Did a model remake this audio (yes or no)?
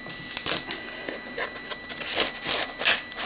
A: no